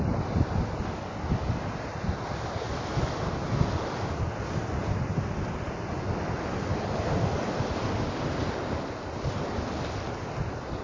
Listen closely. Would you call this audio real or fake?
real